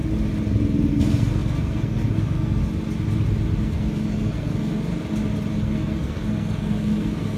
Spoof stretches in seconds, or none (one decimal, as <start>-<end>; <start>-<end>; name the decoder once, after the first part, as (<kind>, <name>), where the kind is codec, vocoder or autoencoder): 0.9-2.6 (codec, SNAC); 3.6-4.9; 5.5-7.4